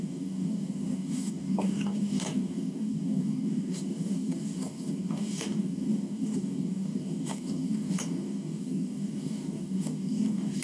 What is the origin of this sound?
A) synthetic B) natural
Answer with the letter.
A